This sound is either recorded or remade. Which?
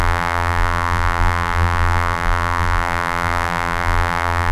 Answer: remade